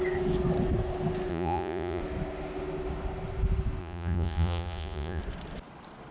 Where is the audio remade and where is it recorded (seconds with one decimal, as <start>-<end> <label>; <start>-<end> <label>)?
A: 0.0-1.3 recorded; 1.3-2.0 remade; 2.0-3.8 recorded; 3.8-5.2 remade; 5.2-6.1 recorded

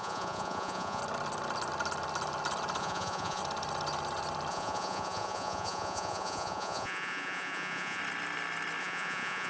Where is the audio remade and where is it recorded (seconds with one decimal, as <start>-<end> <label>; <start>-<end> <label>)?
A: 0.0-1.0 remade; 1.0-2.8 recorded; 2.8-3.4 remade; 3.4-4.5 recorded; 4.5-8.0 remade; 8.0-8.8 recorded; 8.8-9.5 remade